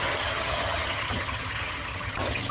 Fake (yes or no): yes